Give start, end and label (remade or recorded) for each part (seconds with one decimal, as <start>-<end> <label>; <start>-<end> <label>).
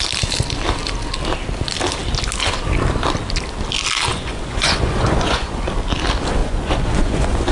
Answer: 0.0-4.1 recorded; 4.1-5.7 remade; 5.7-6.4 recorded; 6.4-7.5 remade